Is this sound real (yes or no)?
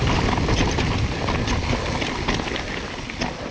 yes